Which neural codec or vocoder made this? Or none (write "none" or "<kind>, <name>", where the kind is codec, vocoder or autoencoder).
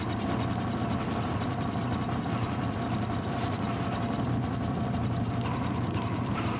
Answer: vocoder, BigVGAN v2